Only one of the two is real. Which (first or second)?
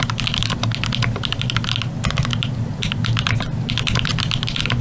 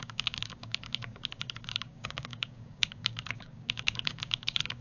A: first